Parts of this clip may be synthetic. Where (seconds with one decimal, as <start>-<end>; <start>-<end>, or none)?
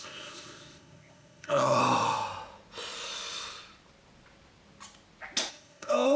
0.0-1.8; 5.5-6.2